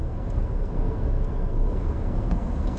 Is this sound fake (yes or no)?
yes